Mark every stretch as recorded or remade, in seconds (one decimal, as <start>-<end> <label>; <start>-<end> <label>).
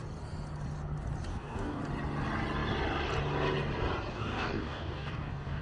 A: 0.0-1.3 recorded; 1.3-1.8 remade; 1.8-4.1 recorded; 4.1-5.6 remade